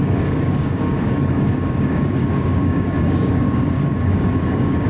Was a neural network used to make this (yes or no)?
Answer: yes